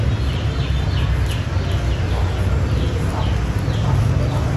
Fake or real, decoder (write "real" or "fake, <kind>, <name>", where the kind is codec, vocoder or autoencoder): real